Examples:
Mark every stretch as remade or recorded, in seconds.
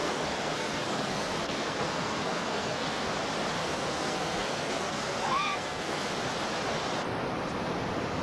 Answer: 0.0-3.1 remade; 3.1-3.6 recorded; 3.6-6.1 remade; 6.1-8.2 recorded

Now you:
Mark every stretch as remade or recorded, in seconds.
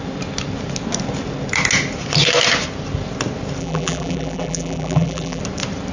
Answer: 0.0-3.6 recorded; 3.6-5.4 remade; 5.4-5.9 recorded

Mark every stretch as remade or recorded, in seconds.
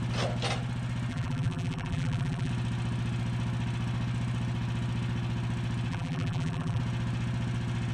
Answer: 0.0-1.1 recorded; 1.1-2.5 remade; 2.5-5.9 recorded; 5.9-6.8 remade; 6.8-7.9 recorded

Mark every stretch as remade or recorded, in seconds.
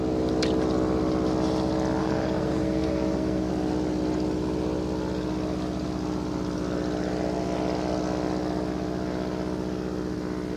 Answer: 0.0-2.0 recorded; 2.0-3.5 remade; 3.5-10.6 recorded